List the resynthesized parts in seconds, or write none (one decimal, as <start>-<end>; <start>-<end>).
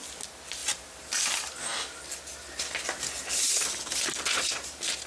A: none